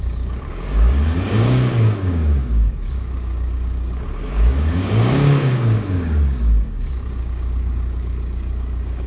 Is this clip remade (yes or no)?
yes